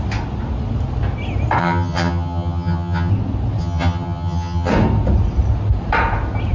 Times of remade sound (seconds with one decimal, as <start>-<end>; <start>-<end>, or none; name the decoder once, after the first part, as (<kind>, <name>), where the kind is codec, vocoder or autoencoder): 1.6-3.1 (vocoder, HiFi-GAN); 3.6-4.7